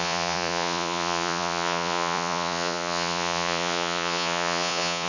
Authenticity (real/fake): fake